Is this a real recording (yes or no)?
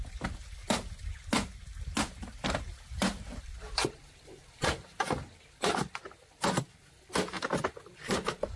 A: yes